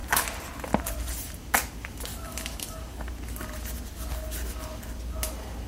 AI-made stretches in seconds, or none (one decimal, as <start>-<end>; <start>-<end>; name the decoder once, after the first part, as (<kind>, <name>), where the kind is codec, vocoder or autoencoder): 2.1-3.1 (codec, DAC)

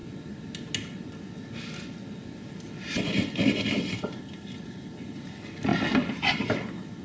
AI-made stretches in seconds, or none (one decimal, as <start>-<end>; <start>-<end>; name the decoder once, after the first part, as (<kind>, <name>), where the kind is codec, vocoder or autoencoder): none

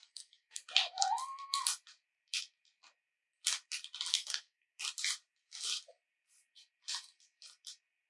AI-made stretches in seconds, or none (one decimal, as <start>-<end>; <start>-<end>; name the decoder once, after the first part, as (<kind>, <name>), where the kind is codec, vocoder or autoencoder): 0.0-0.6 (codec, SNAC); 4.1-4.7

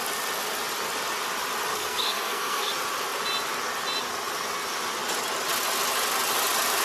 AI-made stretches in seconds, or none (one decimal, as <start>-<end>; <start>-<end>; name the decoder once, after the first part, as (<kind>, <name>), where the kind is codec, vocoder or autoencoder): 1.7-2.7 (codec, SNAC)

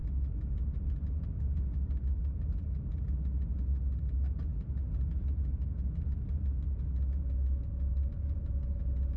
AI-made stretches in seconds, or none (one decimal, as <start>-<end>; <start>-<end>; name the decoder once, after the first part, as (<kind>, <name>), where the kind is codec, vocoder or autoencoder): none